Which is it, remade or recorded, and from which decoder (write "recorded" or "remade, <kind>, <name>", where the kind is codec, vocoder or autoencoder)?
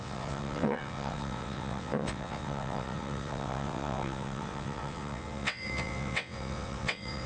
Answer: remade, vocoder, WaveNeXt